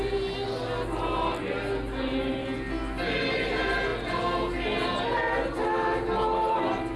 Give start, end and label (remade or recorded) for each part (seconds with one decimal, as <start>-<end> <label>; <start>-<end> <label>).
0.0-7.0 recorded